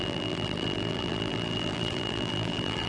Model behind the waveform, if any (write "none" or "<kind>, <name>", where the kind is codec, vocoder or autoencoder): vocoder, BigVGAN v2